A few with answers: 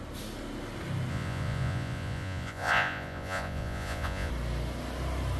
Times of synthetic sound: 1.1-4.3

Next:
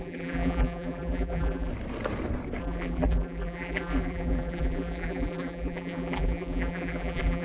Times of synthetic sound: 0.0-1.7; 2.6-7.4